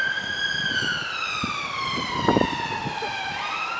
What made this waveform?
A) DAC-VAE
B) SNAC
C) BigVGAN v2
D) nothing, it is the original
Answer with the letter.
D